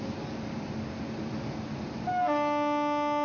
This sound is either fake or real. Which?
real